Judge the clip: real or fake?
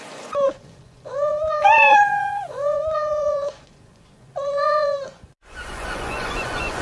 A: fake